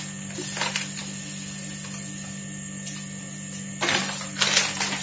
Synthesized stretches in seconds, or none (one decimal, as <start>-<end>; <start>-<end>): none